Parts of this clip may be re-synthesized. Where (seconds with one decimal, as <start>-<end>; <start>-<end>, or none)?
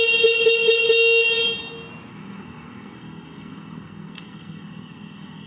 2.1-5.5